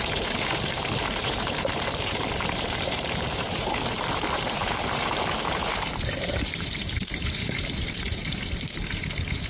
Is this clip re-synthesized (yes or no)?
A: yes